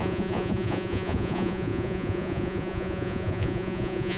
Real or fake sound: fake